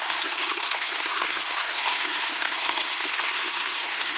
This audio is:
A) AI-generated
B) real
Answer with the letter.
A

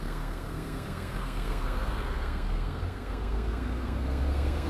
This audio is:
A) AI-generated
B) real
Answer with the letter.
A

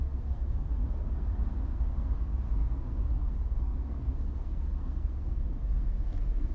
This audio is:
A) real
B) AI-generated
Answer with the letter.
B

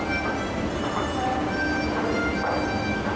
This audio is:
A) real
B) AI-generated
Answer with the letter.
A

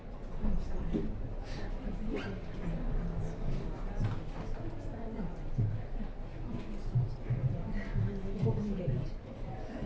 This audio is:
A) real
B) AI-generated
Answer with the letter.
A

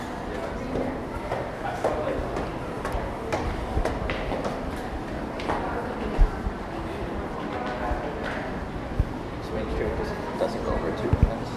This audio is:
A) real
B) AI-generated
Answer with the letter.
A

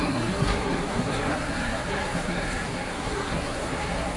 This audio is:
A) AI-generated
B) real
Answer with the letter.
A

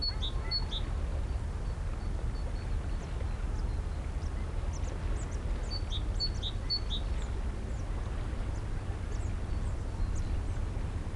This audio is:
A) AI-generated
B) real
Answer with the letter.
B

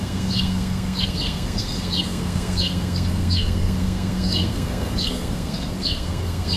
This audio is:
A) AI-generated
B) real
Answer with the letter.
A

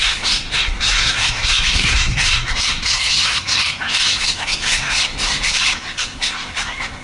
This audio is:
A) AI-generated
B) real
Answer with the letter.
A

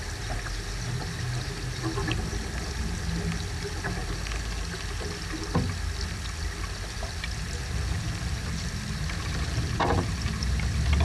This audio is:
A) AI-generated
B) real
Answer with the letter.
B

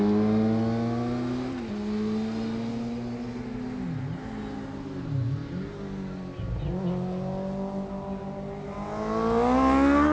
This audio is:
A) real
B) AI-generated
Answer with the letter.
A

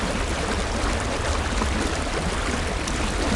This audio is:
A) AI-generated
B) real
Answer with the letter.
B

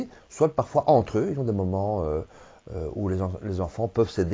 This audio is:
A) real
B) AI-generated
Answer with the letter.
A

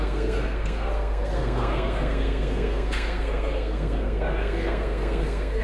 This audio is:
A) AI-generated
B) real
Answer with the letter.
A